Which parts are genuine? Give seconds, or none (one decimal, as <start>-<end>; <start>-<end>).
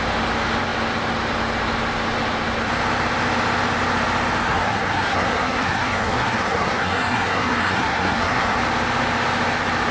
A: 0.0-4.4; 8.6-9.9